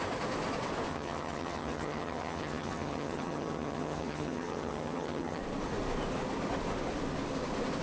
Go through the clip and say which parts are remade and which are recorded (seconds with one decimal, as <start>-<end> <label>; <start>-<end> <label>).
0.0-0.9 recorded; 0.9-5.4 remade; 5.4-7.8 recorded